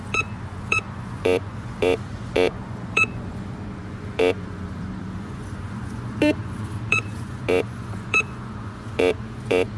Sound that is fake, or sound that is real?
fake